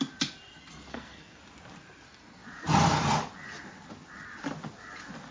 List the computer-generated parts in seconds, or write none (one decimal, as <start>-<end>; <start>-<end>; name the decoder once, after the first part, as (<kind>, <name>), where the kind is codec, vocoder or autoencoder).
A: 0.9-1.4 (codec, SNAC)